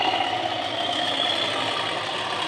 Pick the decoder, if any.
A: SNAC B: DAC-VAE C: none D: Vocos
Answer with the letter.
C